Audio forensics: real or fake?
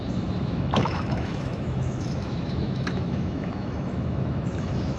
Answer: fake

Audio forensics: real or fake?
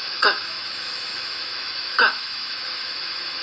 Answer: fake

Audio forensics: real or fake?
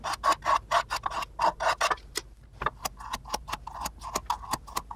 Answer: real